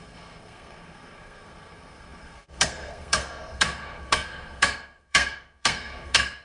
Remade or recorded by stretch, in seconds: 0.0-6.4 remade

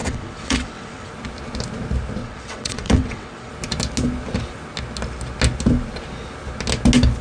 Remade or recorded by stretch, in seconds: 0.0-1.1 remade; 1.1-2.2 recorded; 2.2-3.5 remade; 3.5-7.2 recorded

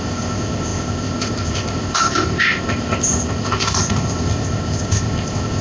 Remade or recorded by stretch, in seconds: 0.0-5.6 remade

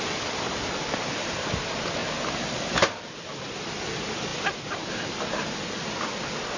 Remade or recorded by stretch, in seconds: 0.0-6.6 recorded

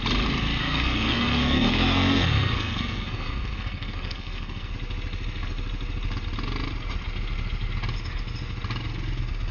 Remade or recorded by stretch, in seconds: 0.0-0.6 recorded; 0.6-4.7 remade; 4.7-9.5 recorded

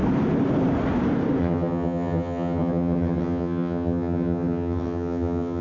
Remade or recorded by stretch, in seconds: 0.0-1.4 recorded; 1.4-5.6 remade

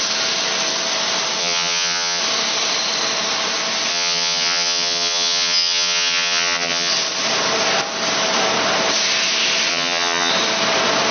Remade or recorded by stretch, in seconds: 0.0-1.4 recorded; 1.4-2.2 remade; 2.2-3.9 recorded; 3.9-6.9 remade; 6.9-9.7 recorded; 9.7-10.3 remade; 10.3-11.1 recorded